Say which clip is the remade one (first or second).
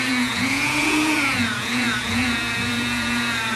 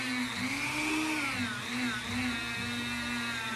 first